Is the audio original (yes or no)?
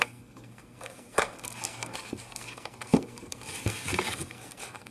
no